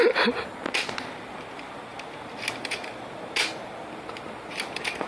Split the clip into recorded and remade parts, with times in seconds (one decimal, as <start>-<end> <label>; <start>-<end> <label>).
0.0-5.1 recorded